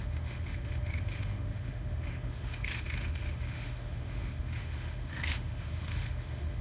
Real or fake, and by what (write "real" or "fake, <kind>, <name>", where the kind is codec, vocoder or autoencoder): fake, autoencoder, DAC-VAE